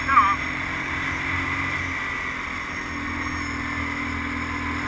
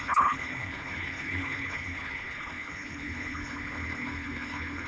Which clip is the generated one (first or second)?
second